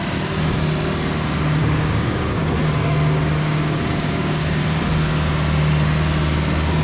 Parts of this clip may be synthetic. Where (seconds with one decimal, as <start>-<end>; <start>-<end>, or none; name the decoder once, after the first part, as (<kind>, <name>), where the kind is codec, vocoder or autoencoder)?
1.6-4.6 (codec, DAC)